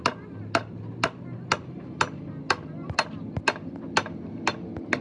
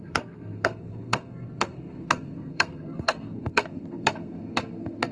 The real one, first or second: first